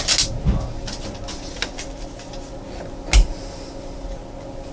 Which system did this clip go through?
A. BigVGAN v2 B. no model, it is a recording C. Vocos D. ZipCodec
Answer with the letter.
B